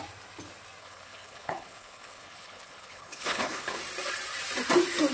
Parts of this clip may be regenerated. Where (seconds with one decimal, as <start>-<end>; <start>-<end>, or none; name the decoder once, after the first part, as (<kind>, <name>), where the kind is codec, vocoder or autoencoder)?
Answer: 0.8-3.8 (codec, HILCodec)